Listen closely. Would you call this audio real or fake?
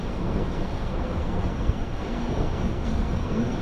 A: fake